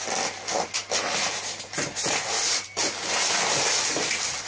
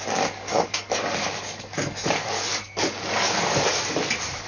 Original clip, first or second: first